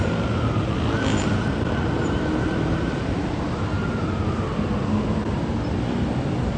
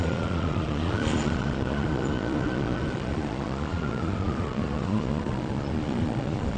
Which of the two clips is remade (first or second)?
second